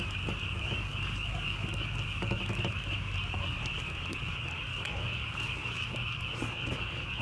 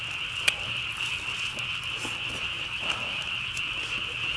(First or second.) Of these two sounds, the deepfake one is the first